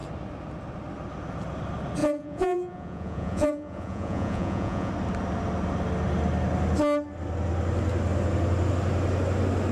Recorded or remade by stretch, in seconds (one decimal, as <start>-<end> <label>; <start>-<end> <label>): 0.0-2.0 recorded; 2.0-4.9 remade; 4.9-9.7 recorded